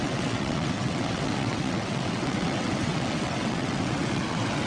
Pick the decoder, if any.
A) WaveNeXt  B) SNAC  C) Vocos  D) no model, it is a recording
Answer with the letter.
A